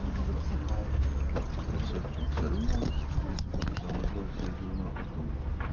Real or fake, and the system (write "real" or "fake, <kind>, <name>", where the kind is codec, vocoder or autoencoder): real